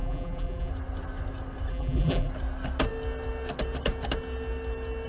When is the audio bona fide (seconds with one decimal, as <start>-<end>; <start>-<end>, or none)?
0.7-1.7; 2.3-5.1